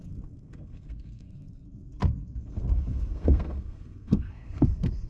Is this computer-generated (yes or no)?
yes